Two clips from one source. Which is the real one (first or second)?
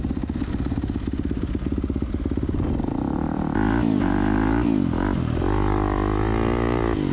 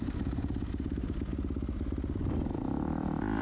first